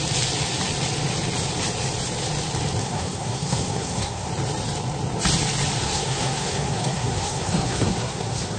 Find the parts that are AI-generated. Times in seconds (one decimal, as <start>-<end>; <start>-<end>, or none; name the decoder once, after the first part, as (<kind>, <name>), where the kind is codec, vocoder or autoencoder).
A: 2.8-4.3 (codec, SNAC); 5.8-8.6